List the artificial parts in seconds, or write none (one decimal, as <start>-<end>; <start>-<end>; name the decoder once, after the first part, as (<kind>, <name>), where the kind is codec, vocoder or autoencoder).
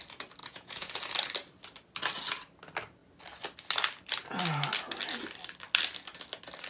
0.4-1.0 (vocoder, Vocos)